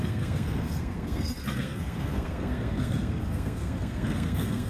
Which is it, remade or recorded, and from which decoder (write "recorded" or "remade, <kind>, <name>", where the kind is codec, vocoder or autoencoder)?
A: remade, codec, SNAC